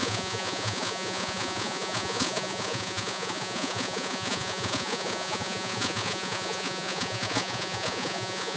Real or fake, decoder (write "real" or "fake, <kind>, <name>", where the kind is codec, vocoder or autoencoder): fake, vocoder, Vocos